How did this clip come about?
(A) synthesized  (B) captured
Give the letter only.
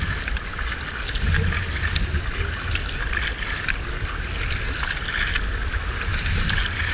B